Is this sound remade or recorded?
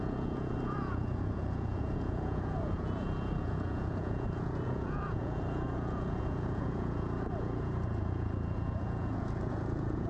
remade